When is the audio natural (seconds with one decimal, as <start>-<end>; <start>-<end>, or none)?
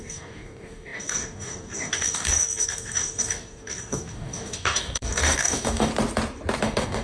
5.9-6.6